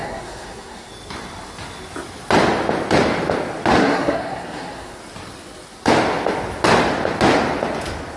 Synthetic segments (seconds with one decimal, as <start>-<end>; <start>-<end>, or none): 0.0-0.9; 3.8-5.0